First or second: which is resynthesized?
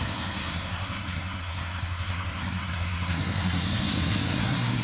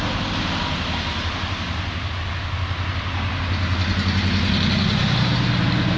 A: first